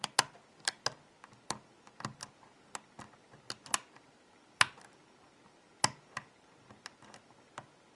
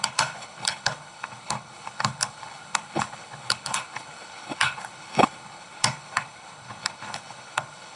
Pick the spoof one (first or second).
second